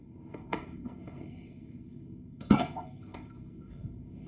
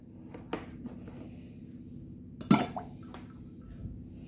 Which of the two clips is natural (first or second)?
second